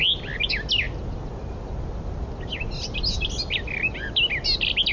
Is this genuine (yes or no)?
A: yes